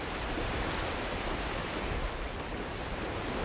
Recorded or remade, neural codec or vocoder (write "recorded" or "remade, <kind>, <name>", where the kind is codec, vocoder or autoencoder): remade, vocoder, BigVGAN v2